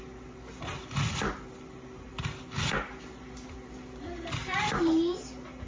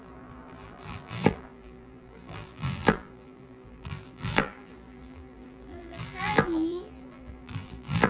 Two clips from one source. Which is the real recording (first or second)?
first